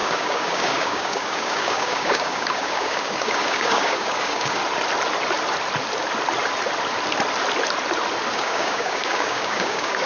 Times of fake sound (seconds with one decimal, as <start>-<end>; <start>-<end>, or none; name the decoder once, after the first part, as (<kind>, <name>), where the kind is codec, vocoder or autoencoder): 0.0-4.6 (codec, DAC); 8.3-10.1